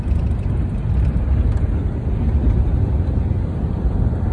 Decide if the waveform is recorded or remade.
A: recorded